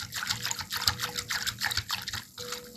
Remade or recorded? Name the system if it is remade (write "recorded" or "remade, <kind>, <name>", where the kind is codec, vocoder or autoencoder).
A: recorded